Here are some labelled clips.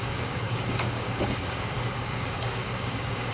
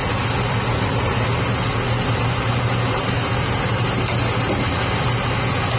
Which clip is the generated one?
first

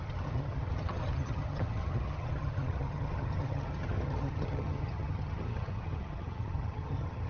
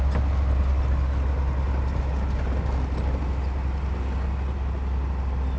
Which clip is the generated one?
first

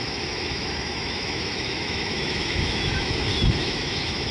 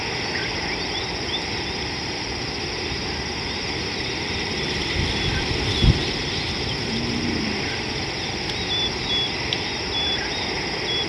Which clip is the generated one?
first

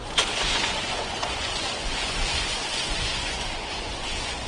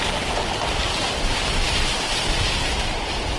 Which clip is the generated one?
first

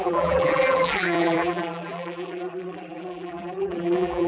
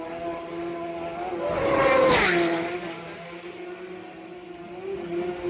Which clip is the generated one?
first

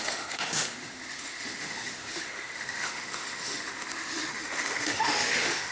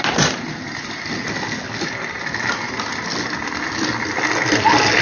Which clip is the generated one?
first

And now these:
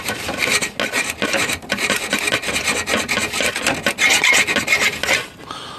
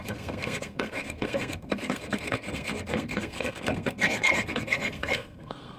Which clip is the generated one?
second